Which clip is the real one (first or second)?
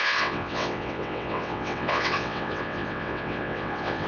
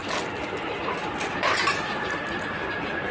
second